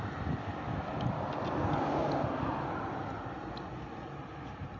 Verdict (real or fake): real